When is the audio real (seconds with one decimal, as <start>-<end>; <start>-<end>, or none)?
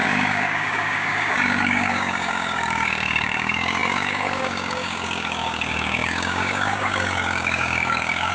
none